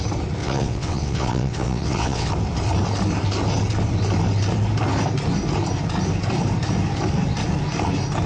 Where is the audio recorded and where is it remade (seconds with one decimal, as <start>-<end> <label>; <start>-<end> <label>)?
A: 0.0-0.4 recorded; 0.4-2.3 remade; 2.3-8.3 recorded